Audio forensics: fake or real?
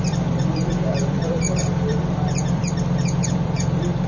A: fake